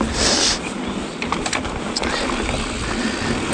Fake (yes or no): no